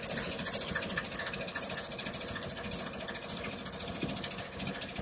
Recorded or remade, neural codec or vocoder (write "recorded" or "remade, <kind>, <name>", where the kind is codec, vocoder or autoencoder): recorded